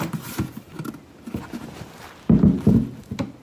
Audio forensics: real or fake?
real